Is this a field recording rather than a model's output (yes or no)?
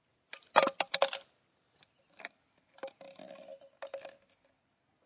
yes